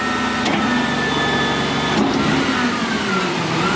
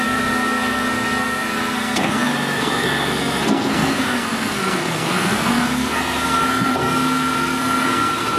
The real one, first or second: first